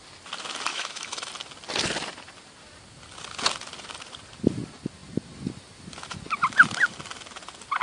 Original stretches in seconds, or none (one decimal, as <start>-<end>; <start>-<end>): 0.0-0.7; 1.3-7.8